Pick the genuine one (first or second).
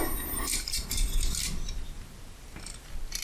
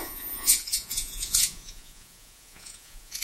first